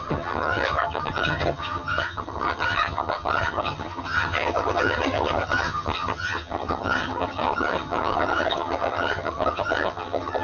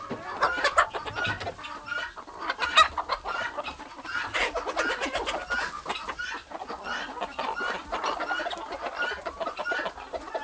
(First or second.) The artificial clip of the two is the first